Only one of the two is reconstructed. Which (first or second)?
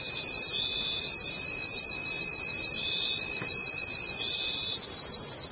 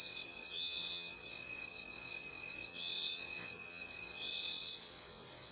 second